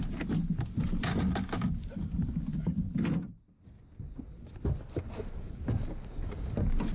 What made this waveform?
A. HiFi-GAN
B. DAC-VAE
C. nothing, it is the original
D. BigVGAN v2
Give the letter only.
C